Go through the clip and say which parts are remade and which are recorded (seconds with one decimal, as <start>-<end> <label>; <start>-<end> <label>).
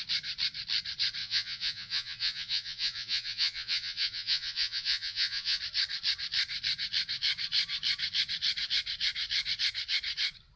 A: 0.0-1.2 recorded; 1.2-5.6 remade; 5.6-10.6 recorded